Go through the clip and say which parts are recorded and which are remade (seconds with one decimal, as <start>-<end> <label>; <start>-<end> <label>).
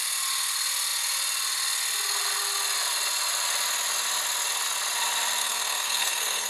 0.0-5.4 recorded; 5.4-6.5 remade